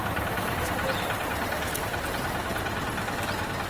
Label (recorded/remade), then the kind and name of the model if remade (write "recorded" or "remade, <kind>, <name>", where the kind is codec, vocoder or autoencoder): recorded